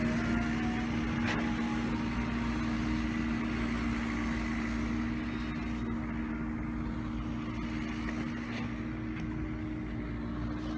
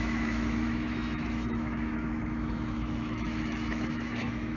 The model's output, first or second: second